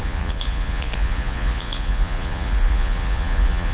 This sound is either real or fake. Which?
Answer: fake